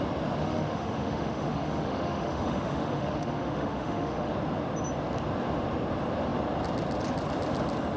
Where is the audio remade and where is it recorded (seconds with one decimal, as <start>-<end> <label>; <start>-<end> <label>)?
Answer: 0.0-0.4 recorded; 0.4-4.3 remade; 4.3-8.0 recorded